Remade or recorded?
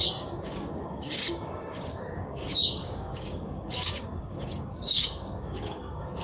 remade